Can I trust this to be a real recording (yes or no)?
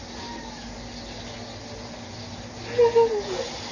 yes